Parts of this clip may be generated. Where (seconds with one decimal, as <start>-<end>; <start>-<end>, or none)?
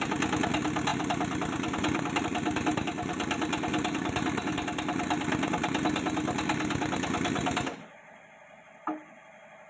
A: none